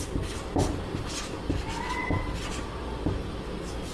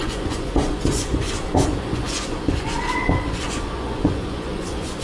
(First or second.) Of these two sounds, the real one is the first